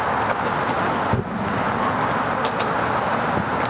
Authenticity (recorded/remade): recorded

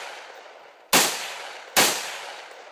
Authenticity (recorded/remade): recorded